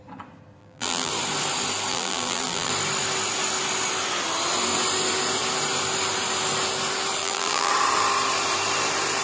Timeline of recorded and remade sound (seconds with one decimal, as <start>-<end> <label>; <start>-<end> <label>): 0.0-0.6 recorded; 0.6-1.1 remade; 1.1-1.9 recorded; 1.9-2.7 remade; 2.7-7.2 recorded; 7.2-7.7 remade; 7.7-9.2 recorded